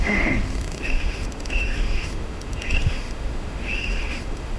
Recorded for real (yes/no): no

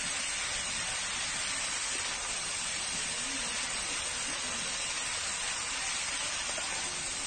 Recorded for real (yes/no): yes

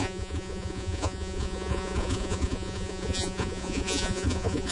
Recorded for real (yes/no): no